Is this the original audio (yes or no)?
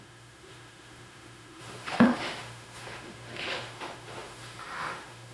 no